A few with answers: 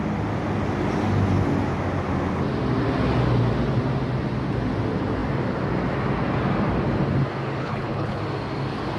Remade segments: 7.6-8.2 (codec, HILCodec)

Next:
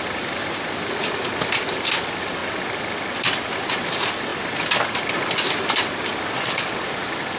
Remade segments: none

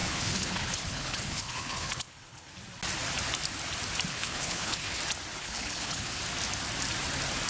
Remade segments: 0.0-2.5 (codec, HILCodec); 4.1-5.0; 5.4-6.2